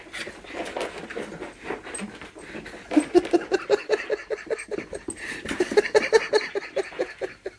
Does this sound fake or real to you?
real